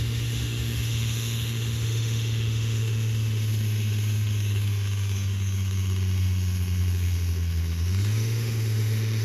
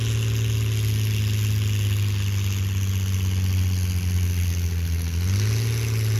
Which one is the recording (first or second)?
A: second